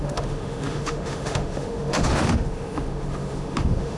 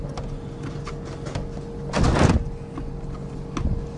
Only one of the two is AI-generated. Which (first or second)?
first